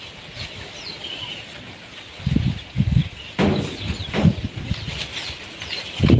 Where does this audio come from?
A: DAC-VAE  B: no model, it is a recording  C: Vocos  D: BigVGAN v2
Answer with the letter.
B